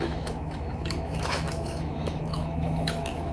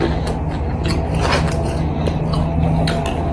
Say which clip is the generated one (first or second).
first